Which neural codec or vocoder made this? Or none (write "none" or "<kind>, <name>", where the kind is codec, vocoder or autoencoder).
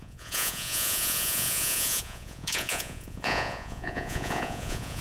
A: vocoder, Vocos